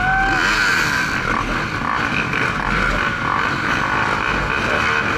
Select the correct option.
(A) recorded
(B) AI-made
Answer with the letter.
A